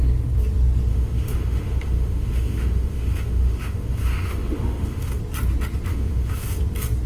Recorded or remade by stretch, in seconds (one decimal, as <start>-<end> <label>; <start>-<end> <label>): 0.0-0.9 recorded; 0.9-5.2 remade; 5.2-5.9 recorded; 5.9-6.6 remade; 6.6-7.1 recorded